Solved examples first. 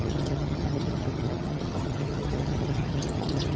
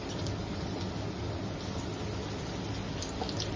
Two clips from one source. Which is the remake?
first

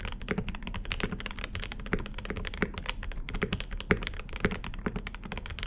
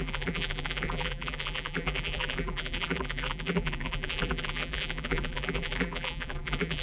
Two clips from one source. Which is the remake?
second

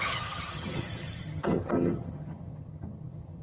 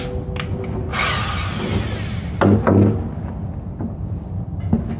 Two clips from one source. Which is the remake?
first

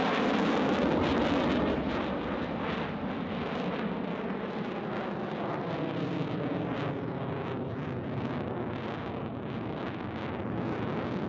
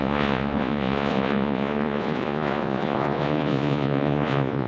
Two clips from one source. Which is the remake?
second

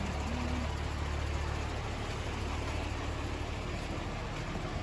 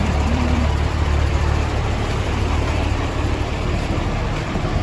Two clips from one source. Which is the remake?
second